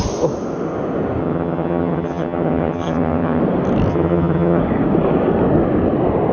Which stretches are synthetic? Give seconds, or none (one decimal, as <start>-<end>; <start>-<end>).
1.2-3.4; 3.9-4.6